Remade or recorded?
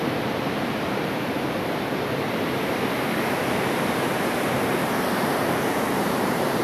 remade